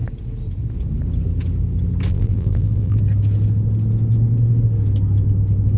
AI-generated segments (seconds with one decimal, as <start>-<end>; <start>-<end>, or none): 2.1-3.0